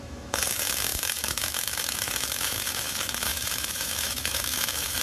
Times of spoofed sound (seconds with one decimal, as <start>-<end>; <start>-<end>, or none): 0.0-5.0